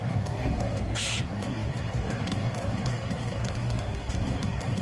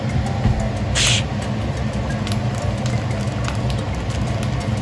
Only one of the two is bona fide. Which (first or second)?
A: second